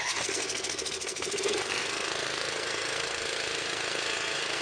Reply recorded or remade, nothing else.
remade